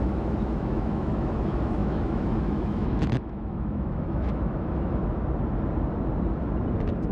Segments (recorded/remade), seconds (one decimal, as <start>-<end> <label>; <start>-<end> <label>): 0.0-5.0 remade; 5.0-7.1 recorded